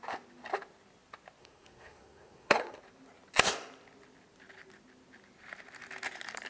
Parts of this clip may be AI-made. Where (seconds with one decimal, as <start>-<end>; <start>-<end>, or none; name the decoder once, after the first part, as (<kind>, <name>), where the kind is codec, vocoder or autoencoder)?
1.4-2.8 (codec, SNAC)